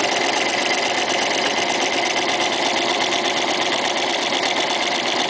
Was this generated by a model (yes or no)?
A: no